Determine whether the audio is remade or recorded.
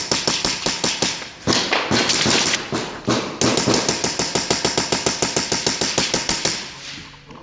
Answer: recorded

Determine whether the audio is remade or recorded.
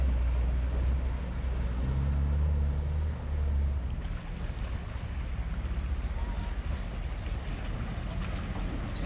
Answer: recorded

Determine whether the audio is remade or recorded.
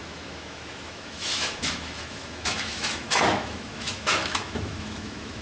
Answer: remade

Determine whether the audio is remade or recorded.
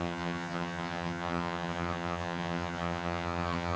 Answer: remade